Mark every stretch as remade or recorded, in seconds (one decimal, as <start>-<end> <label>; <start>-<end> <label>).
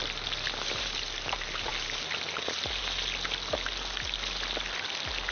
0.0-5.3 recorded